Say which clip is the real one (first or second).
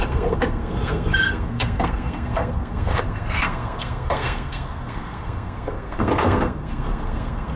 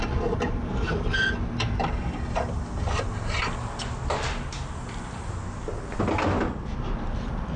second